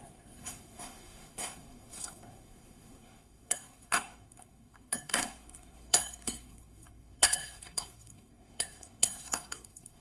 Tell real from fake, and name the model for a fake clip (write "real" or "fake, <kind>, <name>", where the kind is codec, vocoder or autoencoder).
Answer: fake, codec, SNAC